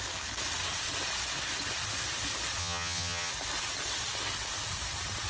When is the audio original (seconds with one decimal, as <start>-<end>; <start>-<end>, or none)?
0.0-2.6; 3.3-5.3